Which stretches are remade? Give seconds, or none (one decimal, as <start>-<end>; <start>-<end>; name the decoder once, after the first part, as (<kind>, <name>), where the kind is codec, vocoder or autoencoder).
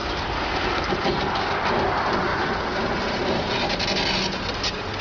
0.0-1.2 (vocoder, BigVGAN v2); 2.3-3.4